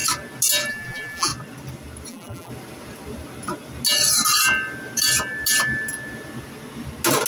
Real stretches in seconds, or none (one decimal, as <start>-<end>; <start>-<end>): 0.0-0.7; 1.3-2.1; 2.5-7.3